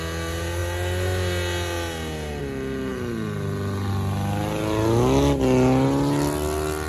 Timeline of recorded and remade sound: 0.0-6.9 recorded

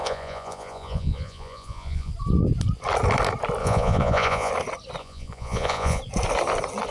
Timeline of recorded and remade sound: 0.0-2.1 remade; 2.1-3.6 recorded; 3.6-4.5 remade; 4.5-5.0 recorded; 5.0-6.0 remade; 6.0-6.9 recorded

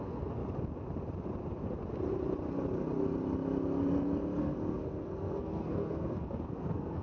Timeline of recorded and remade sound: 0.0-0.4 remade; 0.4-4.4 recorded; 4.4-7.0 remade

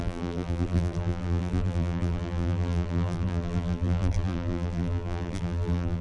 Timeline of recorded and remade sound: 0.0-6.0 remade

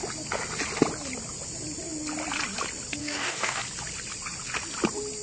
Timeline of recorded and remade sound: 0.0-3.0 recorded; 3.0-3.6 remade; 3.6-5.2 recorded

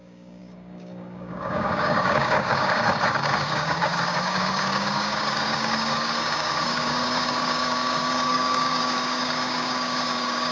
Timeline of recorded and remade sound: 0.0-10.5 remade